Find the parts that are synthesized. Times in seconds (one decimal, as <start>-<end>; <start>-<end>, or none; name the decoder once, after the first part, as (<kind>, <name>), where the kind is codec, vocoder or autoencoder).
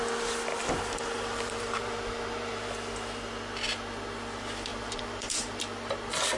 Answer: 0.5-2.7 (vocoder, BigVGAN v2); 4.7-5.6